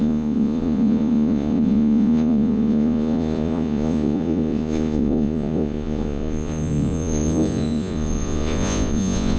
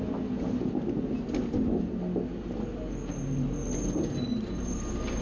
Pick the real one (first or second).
second